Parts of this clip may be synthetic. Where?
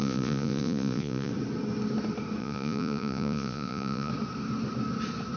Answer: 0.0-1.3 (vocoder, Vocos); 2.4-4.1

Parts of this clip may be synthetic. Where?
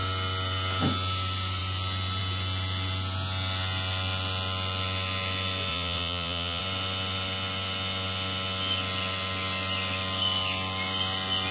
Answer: 5.7-6.6 (vocoder, Vocos)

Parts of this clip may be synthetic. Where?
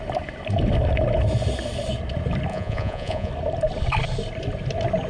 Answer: 2.5-3.3 (vocoder, Vocos)